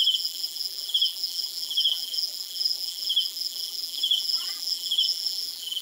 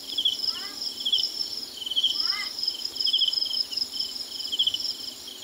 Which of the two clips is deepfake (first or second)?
first